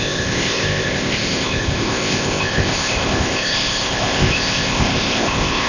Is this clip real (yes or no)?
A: no